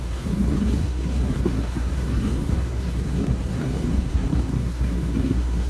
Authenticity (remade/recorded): remade